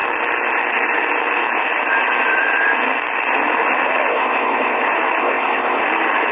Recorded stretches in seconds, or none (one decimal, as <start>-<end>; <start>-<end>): 0.0-4.1; 4.8-5.2; 5.8-6.3